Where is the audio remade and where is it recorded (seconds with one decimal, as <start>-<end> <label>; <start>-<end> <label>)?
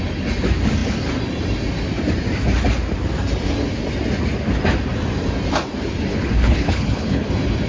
0.0-6.1 recorded; 6.1-7.3 remade; 7.3-7.7 recorded